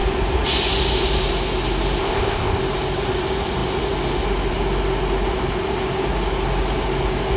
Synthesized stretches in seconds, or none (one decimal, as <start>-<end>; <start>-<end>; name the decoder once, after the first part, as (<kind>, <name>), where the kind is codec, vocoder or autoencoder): 2.0-2.6 (codec, ZipCodec)